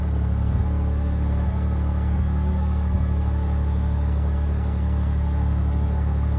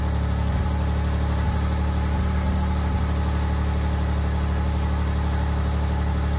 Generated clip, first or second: first